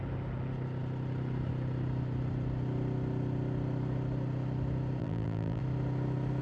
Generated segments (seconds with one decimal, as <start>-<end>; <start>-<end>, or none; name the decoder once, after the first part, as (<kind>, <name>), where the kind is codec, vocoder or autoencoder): 5.0-5.6 (vocoder, BigVGAN v2)